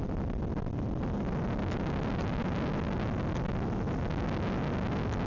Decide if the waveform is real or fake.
real